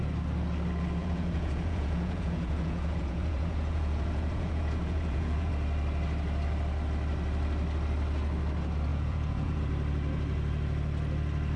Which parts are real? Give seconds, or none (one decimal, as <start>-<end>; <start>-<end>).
0.0-1.0; 5.5-8.9; 9.6-11.6